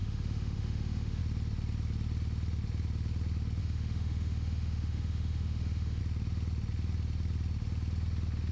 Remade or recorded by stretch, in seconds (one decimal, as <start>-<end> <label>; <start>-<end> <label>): 0.0-1.2 remade; 1.2-3.6 recorded; 3.6-6.0 remade; 6.0-8.5 recorded